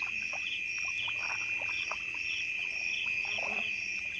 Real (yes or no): yes